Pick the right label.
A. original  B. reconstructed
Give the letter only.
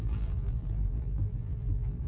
B